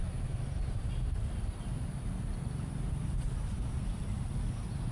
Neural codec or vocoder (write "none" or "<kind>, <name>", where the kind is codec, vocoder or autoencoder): vocoder, BigVGAN v2